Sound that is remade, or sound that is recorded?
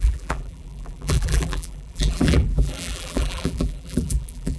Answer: remade